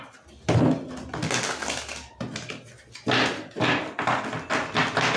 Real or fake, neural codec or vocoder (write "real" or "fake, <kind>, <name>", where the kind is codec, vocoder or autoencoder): real